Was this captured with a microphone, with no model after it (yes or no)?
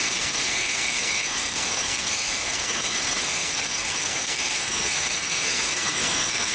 no